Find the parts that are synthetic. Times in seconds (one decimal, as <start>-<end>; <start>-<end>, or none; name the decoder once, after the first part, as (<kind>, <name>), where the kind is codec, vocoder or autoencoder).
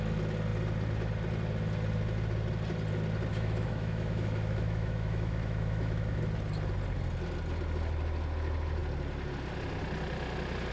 3.3-6.2 (autoencoder, DAC-VAE)